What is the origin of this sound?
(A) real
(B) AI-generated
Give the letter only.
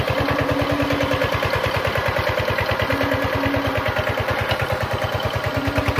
A